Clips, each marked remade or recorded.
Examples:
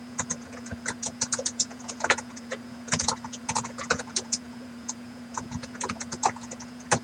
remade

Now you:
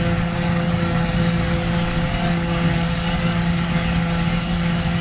remade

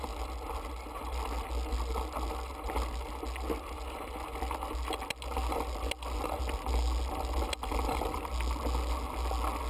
recorded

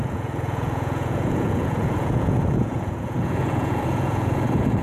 remade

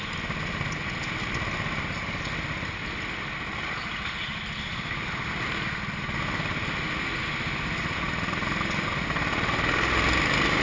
recorded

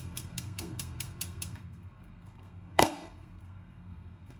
remade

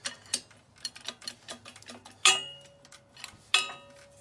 recorded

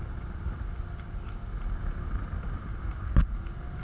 recorded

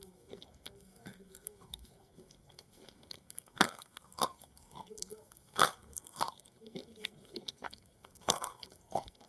remade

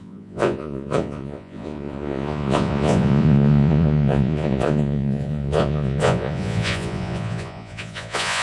remade